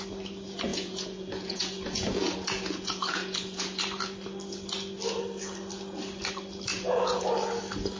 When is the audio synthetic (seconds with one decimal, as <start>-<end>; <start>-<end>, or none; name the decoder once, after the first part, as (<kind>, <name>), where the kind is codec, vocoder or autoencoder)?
0.7-3.8 (vocoder, Vocos); 6.7-7.3